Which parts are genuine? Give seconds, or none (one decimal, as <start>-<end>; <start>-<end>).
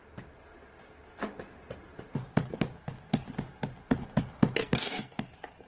0.0-4.6; 5.3-5.7